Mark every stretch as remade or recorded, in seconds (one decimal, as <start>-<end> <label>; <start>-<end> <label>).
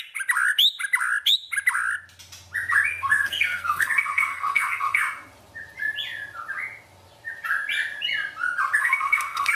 0.0-2.9 recorded; 2.9-5.0 remade; 5.0-8.8 recorded; 8.8-9.5 remade